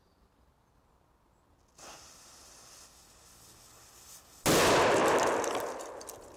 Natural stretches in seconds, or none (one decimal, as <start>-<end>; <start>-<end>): 0.0-6.4